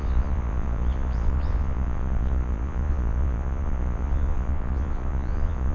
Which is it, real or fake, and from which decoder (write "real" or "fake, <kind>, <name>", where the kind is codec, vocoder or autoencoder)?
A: fake, vocoder, Vocos